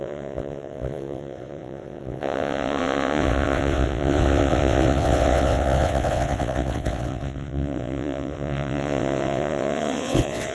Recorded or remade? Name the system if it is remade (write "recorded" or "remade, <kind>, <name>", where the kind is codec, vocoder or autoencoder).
remade, vocoder, WaveNeXt